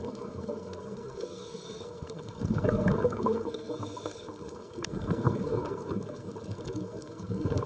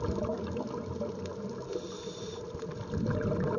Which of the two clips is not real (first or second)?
first